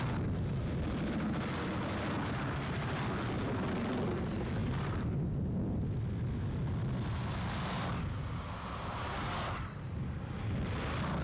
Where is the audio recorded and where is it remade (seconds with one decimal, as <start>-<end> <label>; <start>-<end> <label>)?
0.0-4.6 recorded; 4.6-5.4 remade; 5.4-11.2 recorded